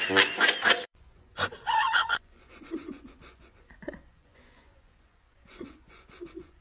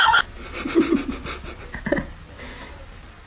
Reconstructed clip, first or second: first